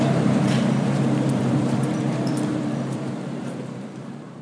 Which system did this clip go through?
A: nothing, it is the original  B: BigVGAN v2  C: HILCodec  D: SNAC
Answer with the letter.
B